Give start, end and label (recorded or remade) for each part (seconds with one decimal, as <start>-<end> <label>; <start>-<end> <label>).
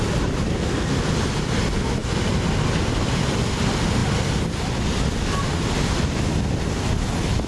0.0-0.5 recorded; 0.5-1.0 remade; 1.0-7.5 recorded